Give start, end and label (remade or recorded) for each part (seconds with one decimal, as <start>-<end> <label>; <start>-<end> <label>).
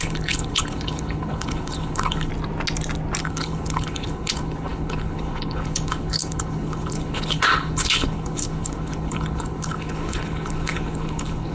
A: 0.0-2.3 remade; 2.3-3.2 recorded; 3.2-11.5 remade